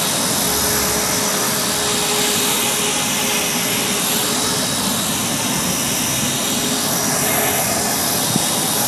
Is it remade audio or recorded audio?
recorded